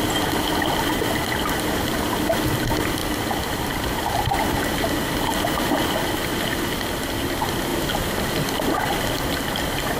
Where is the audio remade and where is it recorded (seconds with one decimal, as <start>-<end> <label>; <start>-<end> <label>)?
0.0-10.0 recorded